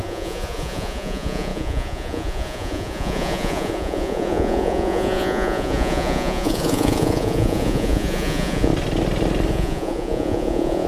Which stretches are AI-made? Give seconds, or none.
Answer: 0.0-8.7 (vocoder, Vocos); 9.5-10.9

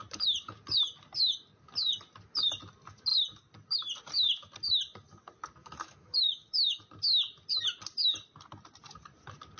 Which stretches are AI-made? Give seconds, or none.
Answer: 5.6-6.8 (autoencoder, DAC-VAE)

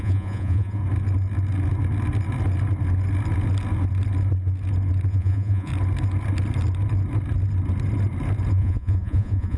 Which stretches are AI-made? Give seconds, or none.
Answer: 0.0-0.8 (vocoder, Vocos); 5.1-5.7; 8.5-9.6

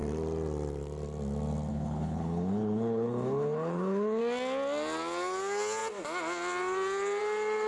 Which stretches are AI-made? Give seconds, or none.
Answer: 1.7-4.2 (codec, HILCodec)

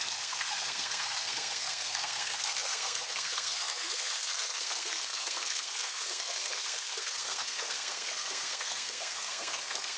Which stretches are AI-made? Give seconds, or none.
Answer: 0.0-10.0 (codec, SNAC)